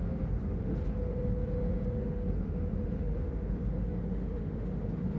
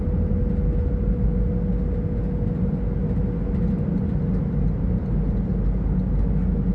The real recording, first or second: second